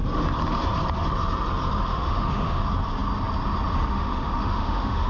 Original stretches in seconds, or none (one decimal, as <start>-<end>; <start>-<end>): 0.0-1.9; 2.6-3.9